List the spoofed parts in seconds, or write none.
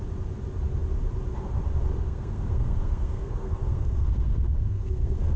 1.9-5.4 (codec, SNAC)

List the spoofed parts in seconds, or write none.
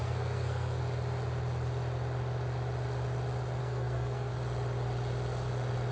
0.0-0.8 (codec, SNAC); 3.6-4.3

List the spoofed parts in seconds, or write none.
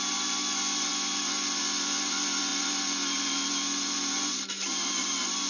none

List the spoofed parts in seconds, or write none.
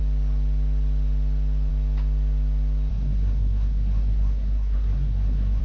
2.9-5.6 (codec, SNAC)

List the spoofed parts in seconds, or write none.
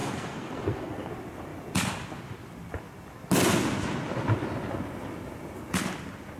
0.0-1.1 (codec, SNAC)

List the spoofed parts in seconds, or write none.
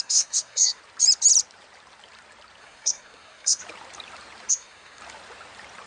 0.0-0.8 (codec, SNAC); 2.6-3.6; 4.5-5.0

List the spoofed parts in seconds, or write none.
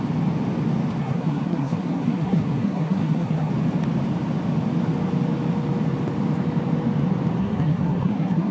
1.0-3.5 (codec, SNAC); 7.4-8.5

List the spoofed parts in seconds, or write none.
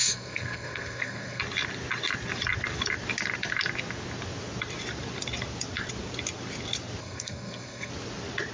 0.0-1.4 (codec, SNAC); 7.0-7.9